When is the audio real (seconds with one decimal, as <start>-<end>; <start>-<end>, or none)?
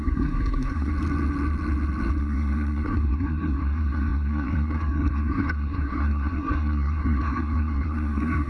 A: 0.9-2.2